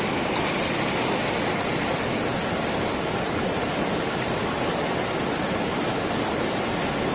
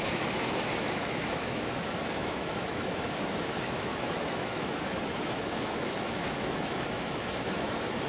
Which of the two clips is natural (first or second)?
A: first